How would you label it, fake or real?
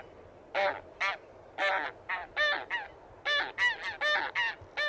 real